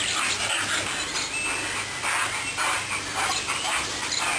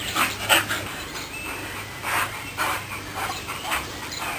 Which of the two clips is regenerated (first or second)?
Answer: second